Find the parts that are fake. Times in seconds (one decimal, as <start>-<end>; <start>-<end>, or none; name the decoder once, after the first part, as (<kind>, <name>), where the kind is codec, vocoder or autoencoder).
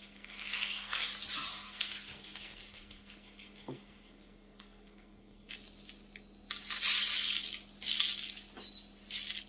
0.0-1.1 (codec, SNAC); 1.5-5.5